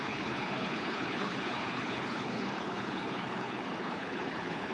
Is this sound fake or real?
fake